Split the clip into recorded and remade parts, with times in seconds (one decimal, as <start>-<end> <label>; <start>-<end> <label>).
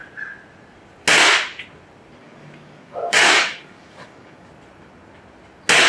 0.0-2.2 recorded; 2.2-4.5 remade; 4.5-5.9 recorded